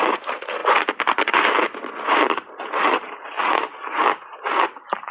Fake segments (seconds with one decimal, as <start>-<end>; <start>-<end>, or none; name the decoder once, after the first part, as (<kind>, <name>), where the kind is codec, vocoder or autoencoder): none